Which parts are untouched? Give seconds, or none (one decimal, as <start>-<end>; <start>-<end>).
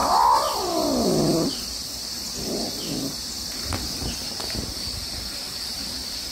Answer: 0.0-3.8